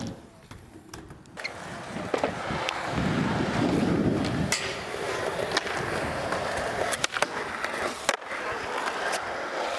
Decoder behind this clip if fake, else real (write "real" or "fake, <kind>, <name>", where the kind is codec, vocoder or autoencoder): real